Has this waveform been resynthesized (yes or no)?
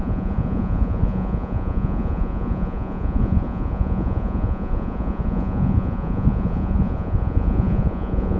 yes